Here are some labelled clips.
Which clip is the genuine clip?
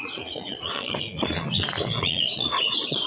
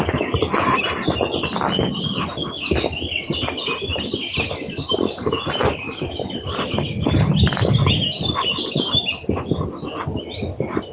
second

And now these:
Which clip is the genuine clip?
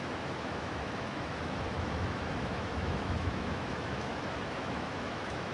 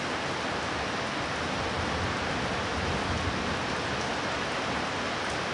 second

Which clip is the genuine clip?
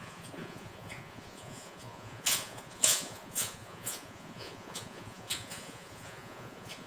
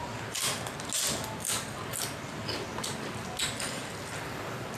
second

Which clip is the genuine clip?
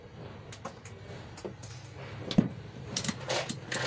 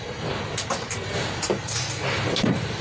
first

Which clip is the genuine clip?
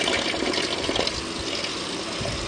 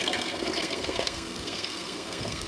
first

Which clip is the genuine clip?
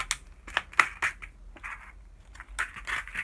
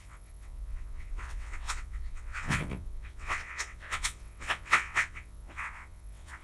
first